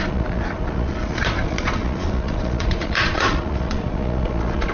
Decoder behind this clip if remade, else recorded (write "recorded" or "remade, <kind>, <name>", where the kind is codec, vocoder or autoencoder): remade, vocoder, Vocos